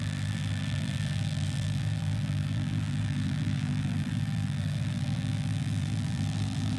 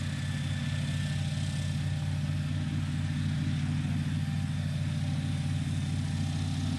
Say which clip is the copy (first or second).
first